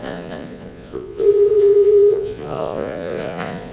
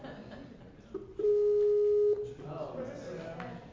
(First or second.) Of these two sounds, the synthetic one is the first